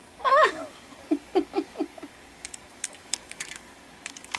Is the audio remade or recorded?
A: remade